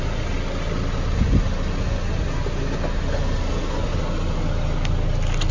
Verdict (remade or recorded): recorded